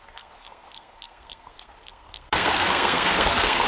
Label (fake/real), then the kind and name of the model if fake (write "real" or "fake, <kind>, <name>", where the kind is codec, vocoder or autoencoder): fake, codec, SNAC